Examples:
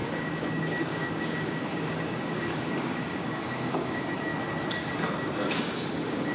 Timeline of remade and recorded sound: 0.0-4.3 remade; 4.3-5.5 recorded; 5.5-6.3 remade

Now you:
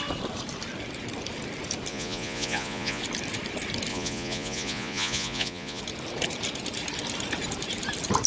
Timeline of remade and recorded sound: 0.0-1.9 recorded; 1.9-3.0 remade; 3.0-3.9 recorded; 3.9-5.8 remade; 5.8-8.3 recorded

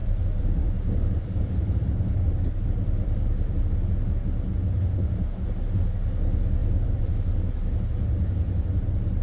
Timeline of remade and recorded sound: 0.0-3.6 remade; 3.6-6.6 recorded; 6.6-7.1 remade; 7.1-9.2 recorded